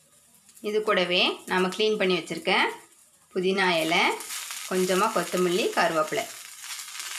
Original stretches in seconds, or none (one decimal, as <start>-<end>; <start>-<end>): 0.0-3.0; 4.3-7.2